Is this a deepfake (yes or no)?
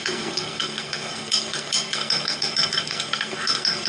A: yes